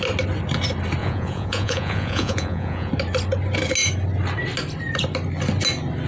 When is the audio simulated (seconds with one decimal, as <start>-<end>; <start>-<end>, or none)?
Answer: 1.0-2.9